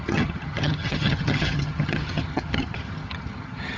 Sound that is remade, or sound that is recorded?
remade